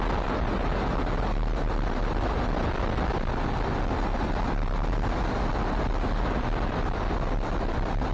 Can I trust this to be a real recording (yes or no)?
yes